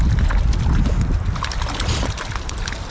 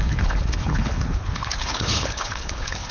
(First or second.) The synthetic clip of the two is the second